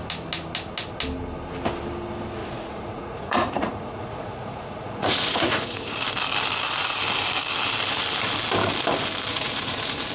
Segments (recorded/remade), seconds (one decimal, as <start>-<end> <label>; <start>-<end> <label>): 0.0-2.4 recorded; 2.4-6.0 remade; 6.0-9.3 recorded; 9.3-10.1 remade

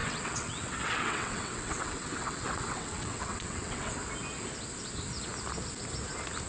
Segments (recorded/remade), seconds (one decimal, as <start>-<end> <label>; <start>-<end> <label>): 0.0-3.9 remade; 3.9-6.5 recorded

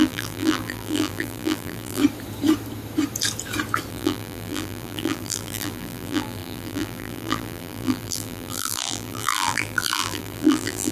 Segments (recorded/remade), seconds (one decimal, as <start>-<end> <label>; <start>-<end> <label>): 0.0-2.0 remade; 2.0-3.9 recorded; 3.9-10.9 remade

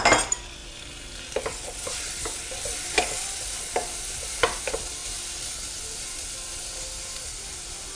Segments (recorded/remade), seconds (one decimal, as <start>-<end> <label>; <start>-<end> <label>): 0.0-8.0 recorded

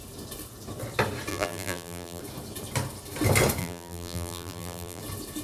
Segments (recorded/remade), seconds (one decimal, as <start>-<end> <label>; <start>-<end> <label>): 0.0-1.3 recorded; 1.3-2.2 remade; 2.2-3.6 recorded; 3.6-5.0 remade; 5.0-5.4 recorded